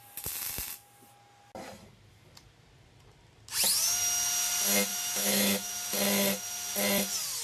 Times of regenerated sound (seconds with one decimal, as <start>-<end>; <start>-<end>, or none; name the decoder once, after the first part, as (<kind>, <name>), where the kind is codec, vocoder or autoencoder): 4.9-5.7 (autoencoder, DAC-VAE)